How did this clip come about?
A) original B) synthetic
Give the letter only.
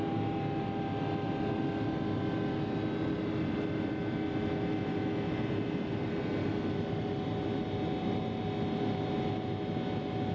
A